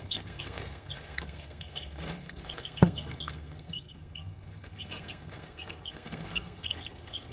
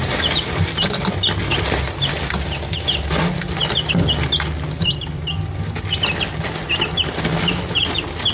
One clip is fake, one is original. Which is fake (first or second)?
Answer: first